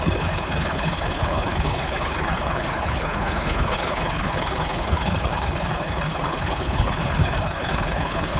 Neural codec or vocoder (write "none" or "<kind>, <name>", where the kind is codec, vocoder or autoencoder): codec, HILCodec